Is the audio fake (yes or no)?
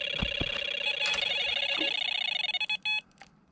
no